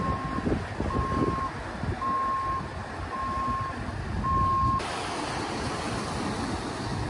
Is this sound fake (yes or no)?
no